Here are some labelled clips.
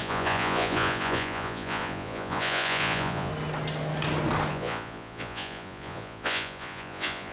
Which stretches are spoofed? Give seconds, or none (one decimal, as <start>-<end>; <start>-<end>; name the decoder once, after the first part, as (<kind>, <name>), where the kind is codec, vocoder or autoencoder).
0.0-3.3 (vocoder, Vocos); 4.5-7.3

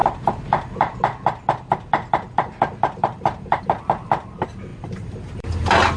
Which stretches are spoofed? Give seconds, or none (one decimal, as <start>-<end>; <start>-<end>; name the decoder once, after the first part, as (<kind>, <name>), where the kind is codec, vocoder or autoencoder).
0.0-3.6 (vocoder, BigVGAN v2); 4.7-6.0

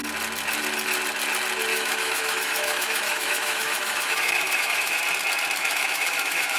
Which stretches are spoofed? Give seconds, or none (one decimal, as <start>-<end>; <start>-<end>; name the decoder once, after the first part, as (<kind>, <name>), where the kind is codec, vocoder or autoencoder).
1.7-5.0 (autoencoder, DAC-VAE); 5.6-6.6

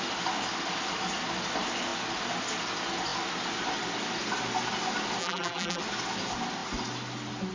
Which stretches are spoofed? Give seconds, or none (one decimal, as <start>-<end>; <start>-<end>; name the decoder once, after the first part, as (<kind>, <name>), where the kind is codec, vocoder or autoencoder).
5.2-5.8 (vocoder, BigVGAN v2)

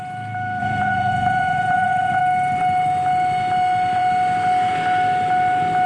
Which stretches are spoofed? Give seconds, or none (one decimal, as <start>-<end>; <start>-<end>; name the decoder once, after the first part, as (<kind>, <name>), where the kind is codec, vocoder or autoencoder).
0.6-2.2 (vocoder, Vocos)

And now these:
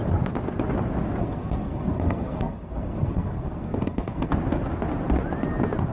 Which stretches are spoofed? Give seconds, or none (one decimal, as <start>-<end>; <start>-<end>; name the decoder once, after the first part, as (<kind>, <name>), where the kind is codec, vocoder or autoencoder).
1.2-4.3 (codec, SNAC)